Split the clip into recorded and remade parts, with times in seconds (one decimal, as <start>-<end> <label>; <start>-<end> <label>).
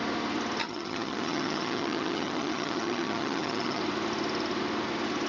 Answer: 0.0-0.6 recorded; 0.6-3.8 remade; 3.8-5.3 recorded